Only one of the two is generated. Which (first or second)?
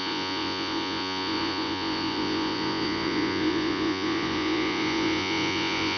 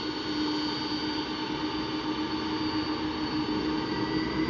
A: first